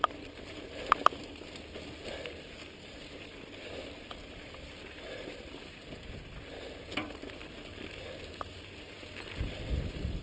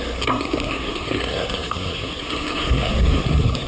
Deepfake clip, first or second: second